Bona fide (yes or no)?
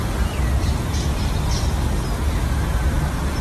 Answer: yes